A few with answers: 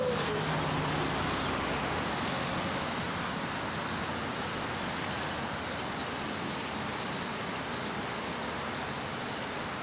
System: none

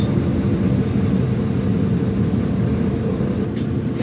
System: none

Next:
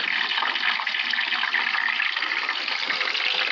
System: none